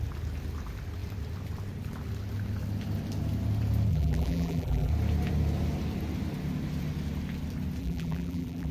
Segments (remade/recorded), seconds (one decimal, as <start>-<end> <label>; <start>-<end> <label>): 0.0-3.9 recorded; 3.9-4.9 remade; 4.9-7.8 recorded; 7.8-8.7 remade